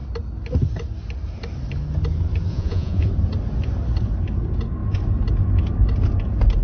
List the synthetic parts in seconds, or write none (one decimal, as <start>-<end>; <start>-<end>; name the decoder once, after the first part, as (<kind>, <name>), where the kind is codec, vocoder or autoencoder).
2.5-3.1 (vocoder, Vocos)